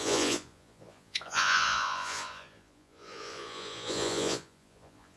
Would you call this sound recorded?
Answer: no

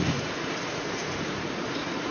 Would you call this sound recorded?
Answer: no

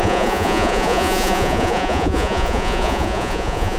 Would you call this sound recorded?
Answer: no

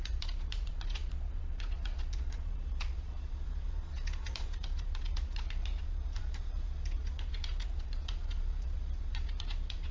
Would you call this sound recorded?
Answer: no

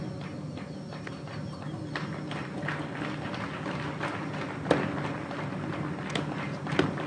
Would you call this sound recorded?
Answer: yes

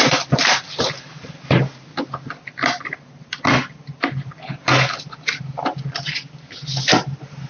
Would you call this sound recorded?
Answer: yes